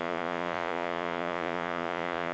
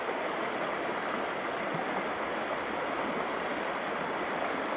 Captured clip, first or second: second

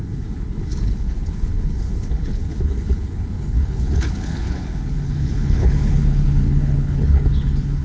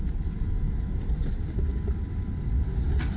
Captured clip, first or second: second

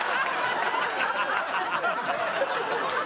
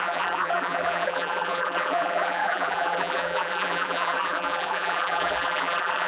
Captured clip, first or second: first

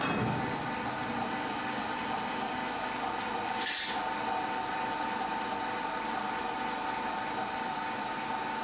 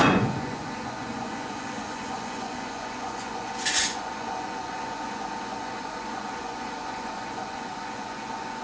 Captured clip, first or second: first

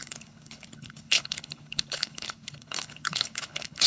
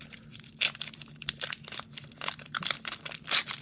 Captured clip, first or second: second